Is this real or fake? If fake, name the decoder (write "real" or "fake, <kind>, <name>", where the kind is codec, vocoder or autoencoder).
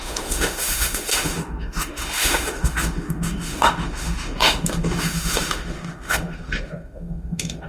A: fake, autoencoder, DAC-VAE